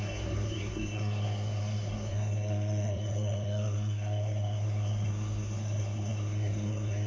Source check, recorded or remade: remade